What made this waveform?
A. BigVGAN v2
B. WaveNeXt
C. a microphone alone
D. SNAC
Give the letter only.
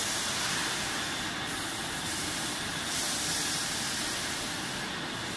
C